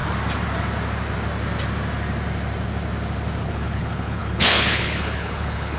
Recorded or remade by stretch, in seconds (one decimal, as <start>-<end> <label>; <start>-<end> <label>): 0.0-3.4 recorded; 3.4-5.8 remade